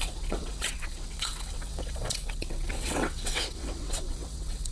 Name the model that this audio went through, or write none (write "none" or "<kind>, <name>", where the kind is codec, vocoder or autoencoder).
vocoder, WaveNeXt